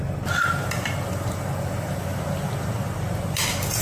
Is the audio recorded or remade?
recorded